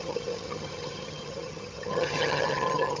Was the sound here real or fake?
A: fake